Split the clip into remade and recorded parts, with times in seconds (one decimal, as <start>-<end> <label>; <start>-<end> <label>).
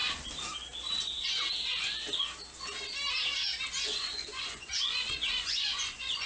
0.0-3.8 recorded; 3.8-6.3 remade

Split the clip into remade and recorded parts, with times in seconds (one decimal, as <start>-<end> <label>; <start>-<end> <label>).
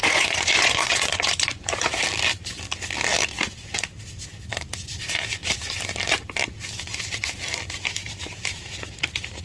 0.0-1.6 remade; 1.6-9.4 recorded